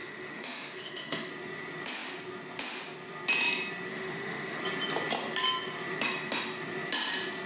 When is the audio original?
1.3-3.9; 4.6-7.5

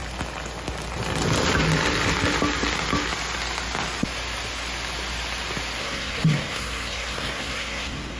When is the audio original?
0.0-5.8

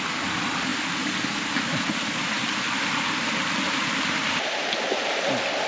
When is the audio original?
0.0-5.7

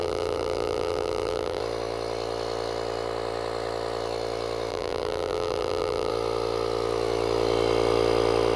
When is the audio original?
1.6-4.7; 6.1-8.6

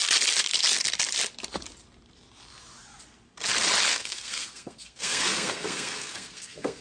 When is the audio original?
0.0-3.9